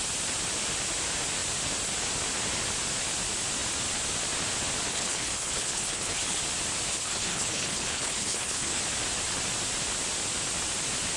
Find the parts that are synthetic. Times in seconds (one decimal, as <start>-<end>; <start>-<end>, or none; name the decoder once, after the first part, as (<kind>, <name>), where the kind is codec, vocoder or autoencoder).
4.9-6.4 (codec, HILCodec); 6.9-8.8